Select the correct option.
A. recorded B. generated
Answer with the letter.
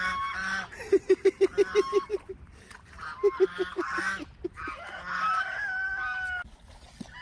A